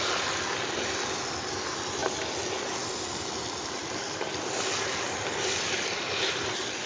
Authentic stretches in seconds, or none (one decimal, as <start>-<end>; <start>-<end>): 0.0-6.9